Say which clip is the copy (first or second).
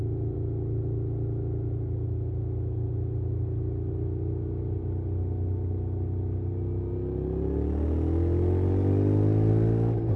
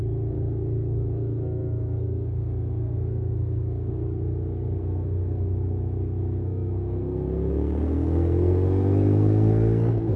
second